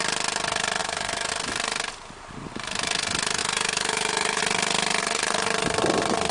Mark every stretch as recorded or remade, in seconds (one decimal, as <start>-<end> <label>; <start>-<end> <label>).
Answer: 0.0-0.8 recorded; 0.8-1.3 remade; 1.3-3.4 recorded; 3.4-4.4 remade; 4.4-6.3 recorded